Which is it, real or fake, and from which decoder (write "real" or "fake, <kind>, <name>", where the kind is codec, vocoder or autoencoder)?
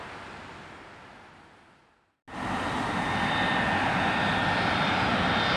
real